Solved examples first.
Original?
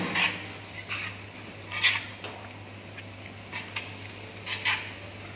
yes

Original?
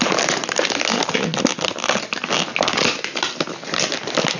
yes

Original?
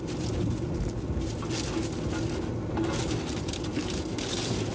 yes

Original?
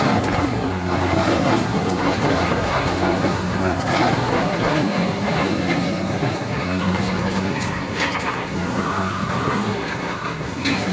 no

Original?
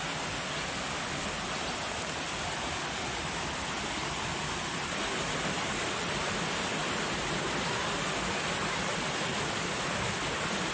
yes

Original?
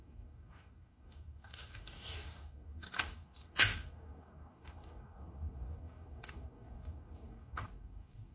no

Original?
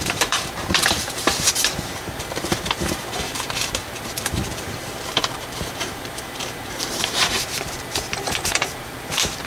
no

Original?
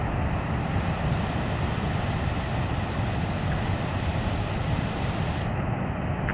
yes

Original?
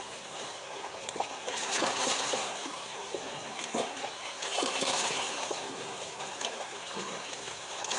no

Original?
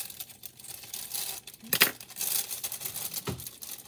yes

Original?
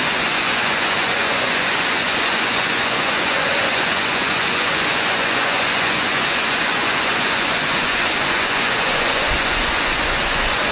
no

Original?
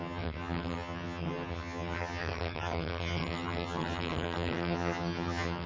no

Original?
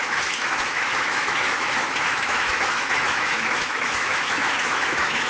no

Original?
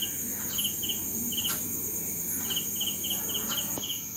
yes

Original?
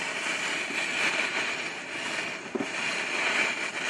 yes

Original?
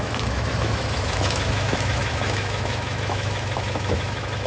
no